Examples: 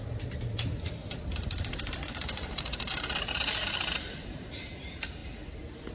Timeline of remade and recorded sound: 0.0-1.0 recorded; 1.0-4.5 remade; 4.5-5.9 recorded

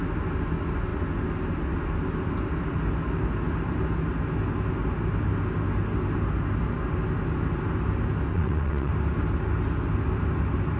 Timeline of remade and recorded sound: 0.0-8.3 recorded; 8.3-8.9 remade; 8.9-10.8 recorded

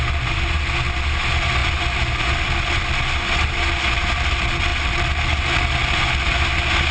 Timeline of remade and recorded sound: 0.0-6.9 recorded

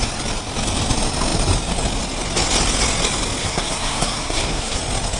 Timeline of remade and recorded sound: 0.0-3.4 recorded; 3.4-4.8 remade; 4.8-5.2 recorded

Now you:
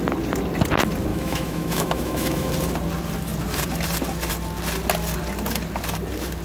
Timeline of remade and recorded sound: 0.0-1.1 recorded; 1.1-2.5 remade; 2.5-6.4 recorded